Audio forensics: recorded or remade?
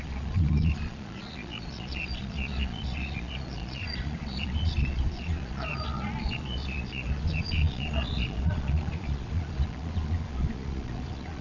remade